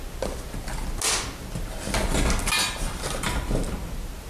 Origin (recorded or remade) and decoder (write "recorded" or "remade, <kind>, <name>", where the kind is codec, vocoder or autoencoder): recorded